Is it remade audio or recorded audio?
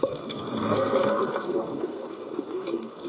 remade